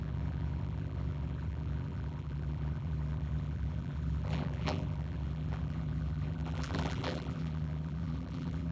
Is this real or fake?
fake